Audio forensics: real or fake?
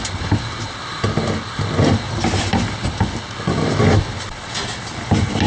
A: real